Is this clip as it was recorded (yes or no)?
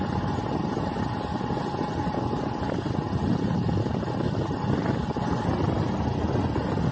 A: yes